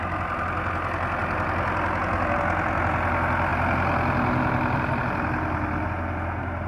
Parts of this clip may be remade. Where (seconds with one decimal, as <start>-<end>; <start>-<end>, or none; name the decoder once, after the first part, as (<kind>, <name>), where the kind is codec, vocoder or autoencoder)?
none